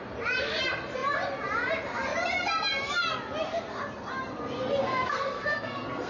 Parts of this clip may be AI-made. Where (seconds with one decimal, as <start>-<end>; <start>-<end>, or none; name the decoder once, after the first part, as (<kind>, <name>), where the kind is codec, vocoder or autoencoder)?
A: 4.8-6.1 (codec, SNAC)